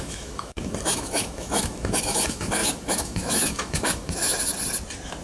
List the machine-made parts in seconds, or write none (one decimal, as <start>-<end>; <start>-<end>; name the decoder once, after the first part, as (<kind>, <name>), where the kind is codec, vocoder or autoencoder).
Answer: 0.0-4.5 (autoencoder, DAC-VAE)